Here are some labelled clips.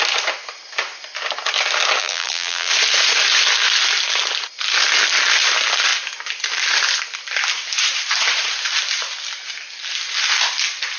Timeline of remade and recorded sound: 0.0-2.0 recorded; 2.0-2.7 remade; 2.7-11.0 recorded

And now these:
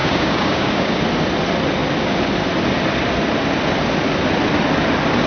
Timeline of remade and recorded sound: 0.0-1.0 remade; 1.0-5.3 recorded

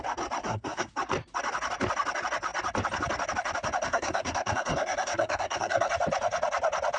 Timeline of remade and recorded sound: 0.0-0.4 recorded; 0.4-0.9 remade; 0.9-3.9 recorded; 3.9-5.9 remade; 5.9-7.0 recorded

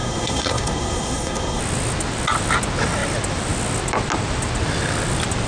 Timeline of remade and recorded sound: 0.0-1.6 remade; 1.6-5.5 recorded

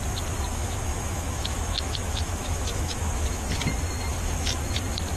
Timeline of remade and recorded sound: 0.0-0.5 recorded; 0.5-3.6 remade; 3.6-4.1 recorded; 4.1-4.6 remade; 4.6-5.2 recorded